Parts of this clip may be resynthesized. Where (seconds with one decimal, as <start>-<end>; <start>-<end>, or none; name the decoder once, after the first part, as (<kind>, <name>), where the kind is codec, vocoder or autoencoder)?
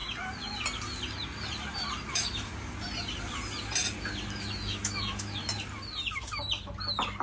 2.1-2.5 (autoencoder, DAC-VAE); 4.4-5.4